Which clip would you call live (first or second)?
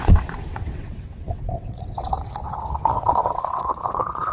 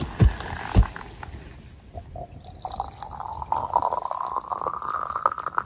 second